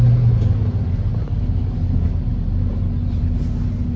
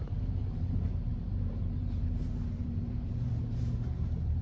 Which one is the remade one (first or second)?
second